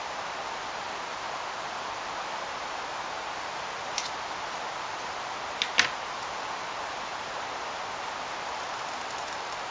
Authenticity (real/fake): real